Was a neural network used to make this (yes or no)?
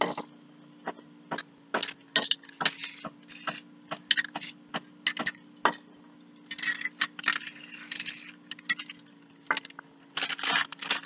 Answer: no